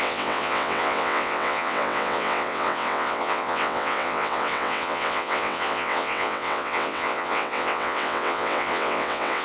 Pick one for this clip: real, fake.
fake